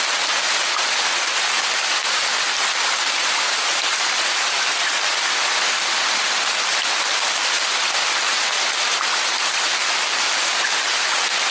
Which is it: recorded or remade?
recorded